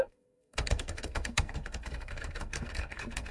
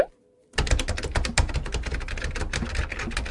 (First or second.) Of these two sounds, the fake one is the first